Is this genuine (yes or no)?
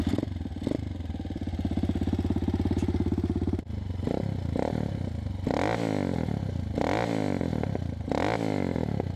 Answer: yes